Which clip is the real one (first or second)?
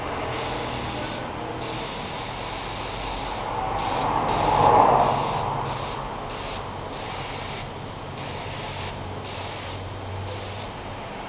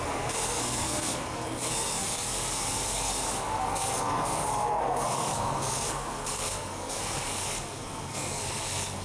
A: first